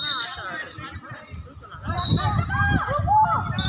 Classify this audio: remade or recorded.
recorded